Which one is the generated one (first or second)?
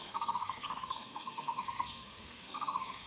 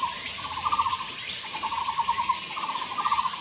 first